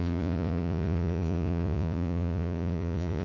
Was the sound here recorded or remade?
remade